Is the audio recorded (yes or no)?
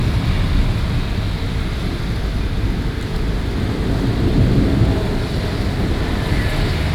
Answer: yes